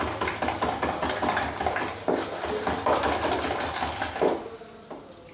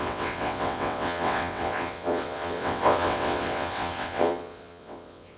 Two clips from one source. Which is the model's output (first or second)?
second